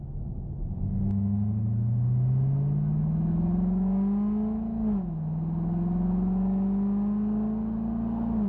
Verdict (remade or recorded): recorded